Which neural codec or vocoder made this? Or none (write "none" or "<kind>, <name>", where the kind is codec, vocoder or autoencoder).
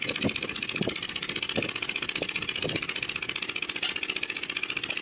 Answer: none